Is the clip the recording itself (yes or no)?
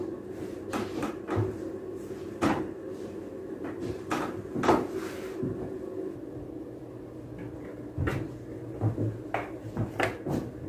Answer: yes